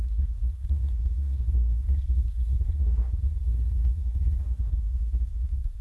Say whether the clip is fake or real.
fake